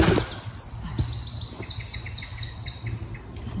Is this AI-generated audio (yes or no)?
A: no